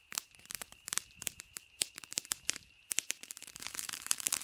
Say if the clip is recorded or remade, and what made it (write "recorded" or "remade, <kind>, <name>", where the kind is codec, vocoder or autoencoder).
remade, vocoder, BigVGAN v2